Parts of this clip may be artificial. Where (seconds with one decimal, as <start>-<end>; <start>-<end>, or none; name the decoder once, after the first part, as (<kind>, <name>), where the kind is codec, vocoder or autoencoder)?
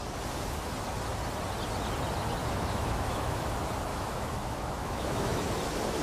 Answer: 2.4-3.5 (autoencoder, DAC-VAE); 3.9-5.5